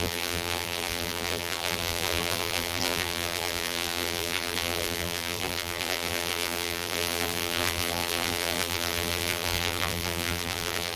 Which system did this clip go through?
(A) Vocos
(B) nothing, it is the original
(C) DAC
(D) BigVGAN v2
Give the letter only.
D